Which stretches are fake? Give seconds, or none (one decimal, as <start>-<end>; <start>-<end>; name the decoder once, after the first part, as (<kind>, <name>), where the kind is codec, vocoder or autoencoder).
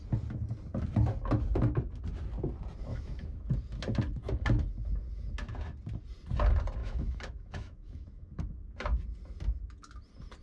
2.9-3.5 (autoencoder, DAC-VAE); 6.8-8.4